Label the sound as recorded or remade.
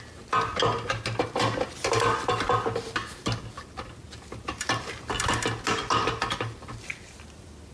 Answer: recorded